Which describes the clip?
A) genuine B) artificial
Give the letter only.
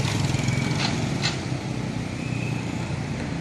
A